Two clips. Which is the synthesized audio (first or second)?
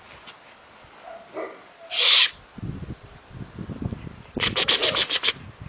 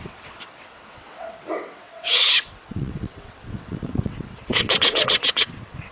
second